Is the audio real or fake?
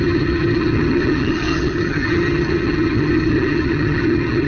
fake